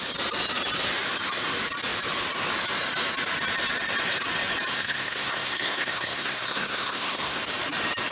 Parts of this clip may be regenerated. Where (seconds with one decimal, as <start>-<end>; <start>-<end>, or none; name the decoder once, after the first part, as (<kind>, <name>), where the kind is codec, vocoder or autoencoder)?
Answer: 4.7-7.4 (codec, SNAC)